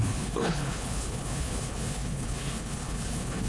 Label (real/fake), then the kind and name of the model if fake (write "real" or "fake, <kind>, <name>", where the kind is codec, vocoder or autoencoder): fake, codec, HILCodec